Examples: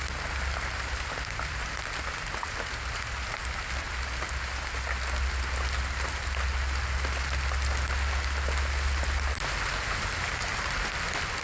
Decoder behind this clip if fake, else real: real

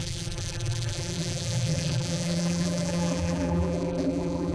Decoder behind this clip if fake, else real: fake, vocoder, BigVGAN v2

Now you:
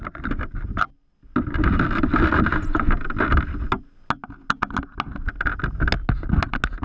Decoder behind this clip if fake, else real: real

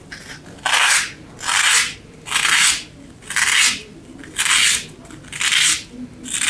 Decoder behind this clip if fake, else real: real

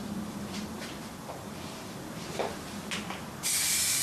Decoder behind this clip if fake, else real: real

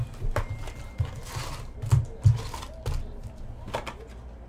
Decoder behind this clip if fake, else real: real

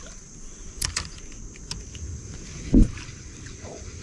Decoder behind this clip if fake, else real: real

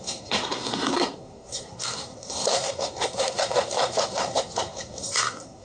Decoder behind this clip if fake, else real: fake, codec, SNAC